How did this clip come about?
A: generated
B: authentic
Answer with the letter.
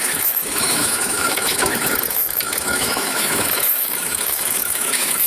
A